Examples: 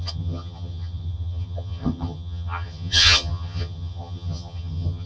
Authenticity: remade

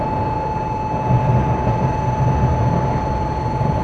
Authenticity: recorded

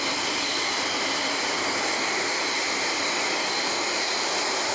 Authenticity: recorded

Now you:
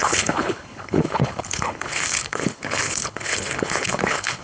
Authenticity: remade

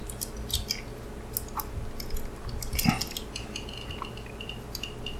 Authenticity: recorded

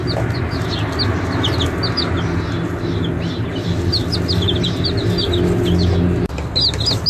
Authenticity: recorded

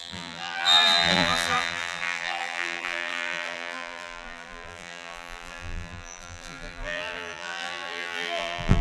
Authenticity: remade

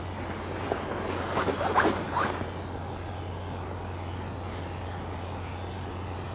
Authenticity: recorded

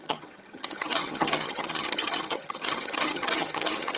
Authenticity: remade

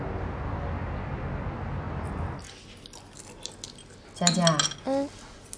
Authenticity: recorded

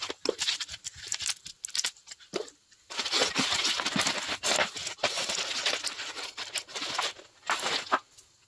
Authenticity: recorded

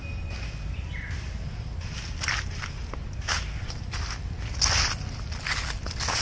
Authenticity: recorded